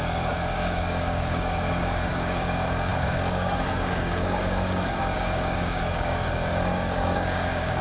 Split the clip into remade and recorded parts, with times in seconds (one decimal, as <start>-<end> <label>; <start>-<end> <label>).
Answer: 0.0-7.8 remade